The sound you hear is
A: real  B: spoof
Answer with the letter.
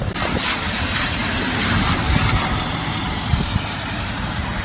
B